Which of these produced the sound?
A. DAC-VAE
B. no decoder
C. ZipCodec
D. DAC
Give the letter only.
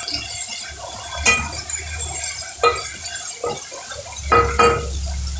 B